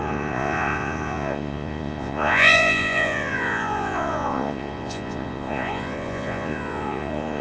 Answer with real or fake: fake